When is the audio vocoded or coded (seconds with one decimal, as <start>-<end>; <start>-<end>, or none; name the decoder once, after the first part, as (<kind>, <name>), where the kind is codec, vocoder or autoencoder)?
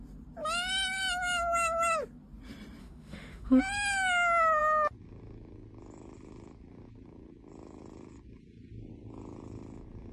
2.8-3.6 (autoencoder, DAC-VAE)